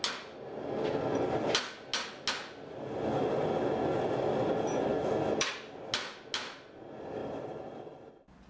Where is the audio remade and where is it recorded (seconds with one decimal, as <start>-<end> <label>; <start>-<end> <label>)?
0.0-4.9 recorded; 4.9-5.7 remade; 5.7-7.2 recorded; 7.2-8.1 remade; 8.1-8.5 recorded